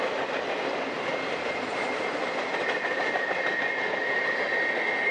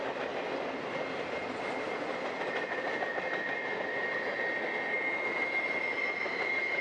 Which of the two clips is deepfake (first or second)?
first